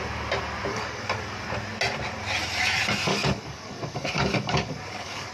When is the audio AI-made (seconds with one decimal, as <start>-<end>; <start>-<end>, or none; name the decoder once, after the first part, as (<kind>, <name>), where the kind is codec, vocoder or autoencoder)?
0.7-1.2 (codec, DAC); 3.1-5.3